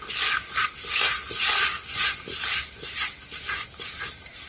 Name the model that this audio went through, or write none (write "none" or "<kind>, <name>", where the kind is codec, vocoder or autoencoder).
none